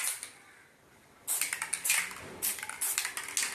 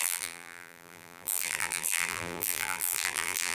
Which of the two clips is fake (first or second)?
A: second